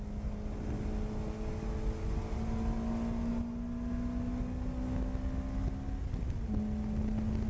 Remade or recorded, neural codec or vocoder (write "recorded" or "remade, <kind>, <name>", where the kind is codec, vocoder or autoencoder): recorded